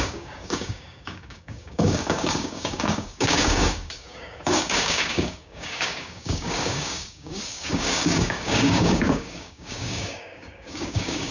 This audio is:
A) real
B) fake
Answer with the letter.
B